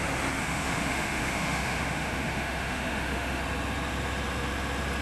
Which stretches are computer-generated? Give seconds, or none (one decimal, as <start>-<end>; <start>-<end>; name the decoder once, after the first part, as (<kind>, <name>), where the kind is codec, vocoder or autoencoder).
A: 0.4-3.4 (autoencoder, DAC-VAE)